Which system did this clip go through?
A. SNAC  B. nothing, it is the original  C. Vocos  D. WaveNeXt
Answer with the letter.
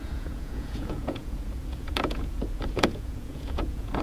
C